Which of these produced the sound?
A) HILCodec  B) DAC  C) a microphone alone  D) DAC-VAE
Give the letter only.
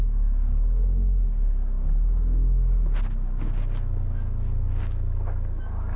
C